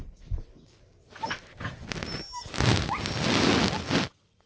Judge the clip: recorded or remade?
recorded